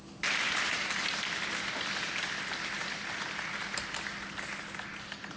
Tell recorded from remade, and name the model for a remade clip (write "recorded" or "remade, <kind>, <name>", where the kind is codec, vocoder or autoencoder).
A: recorded